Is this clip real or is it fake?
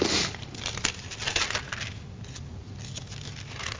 real